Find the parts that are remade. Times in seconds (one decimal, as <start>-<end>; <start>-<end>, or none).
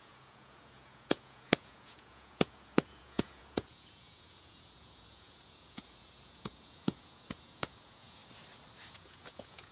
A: 0.0-8.2; 8.9-9.7